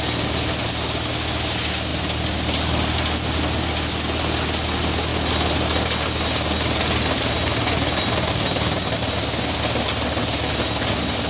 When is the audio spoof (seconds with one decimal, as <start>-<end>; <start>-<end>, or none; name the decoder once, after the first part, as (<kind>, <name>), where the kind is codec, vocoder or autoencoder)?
none